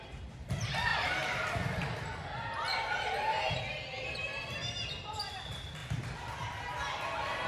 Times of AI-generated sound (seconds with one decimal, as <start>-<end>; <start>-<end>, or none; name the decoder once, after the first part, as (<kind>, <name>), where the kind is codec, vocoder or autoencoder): none

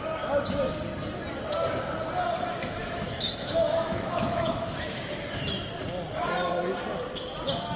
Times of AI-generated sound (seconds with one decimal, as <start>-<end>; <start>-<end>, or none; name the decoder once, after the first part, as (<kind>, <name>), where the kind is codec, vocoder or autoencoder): 2.8-5.7 (autoencoder, DAC-VAE)

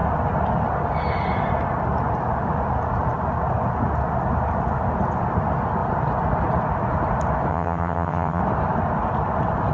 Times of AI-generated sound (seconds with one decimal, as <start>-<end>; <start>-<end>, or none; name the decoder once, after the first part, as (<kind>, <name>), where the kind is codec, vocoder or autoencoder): 7.5-8.4 (vocoder, HiFi-GAN)

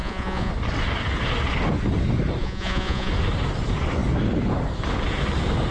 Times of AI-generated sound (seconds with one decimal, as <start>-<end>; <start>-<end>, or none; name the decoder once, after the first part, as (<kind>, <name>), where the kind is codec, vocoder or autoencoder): 0.0-0.5 (vocoder, Vocos); 2.4-3.1

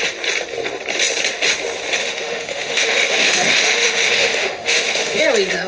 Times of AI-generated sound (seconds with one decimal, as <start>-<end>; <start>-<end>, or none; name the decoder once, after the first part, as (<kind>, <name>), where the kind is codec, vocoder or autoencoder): 2.0-5.2 (autoencoder, DAC-VAE)